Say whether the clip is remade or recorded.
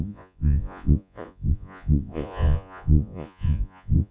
remade